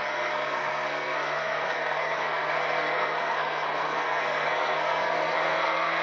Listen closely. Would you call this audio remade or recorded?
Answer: remade